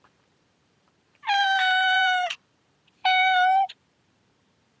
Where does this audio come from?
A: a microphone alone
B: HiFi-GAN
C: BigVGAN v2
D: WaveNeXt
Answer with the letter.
C